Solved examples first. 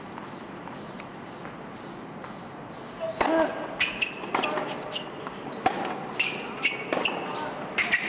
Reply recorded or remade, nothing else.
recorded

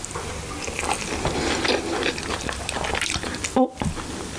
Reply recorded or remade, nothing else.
recorded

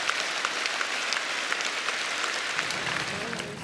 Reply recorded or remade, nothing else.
recorded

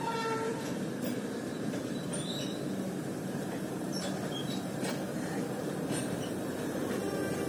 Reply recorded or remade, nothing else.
remade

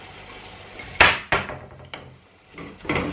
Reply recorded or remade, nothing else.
recorded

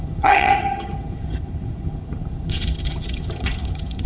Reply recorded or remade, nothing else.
remade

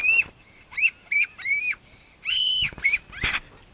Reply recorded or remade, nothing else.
remade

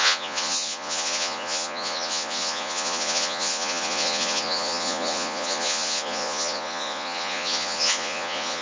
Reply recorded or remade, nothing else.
remade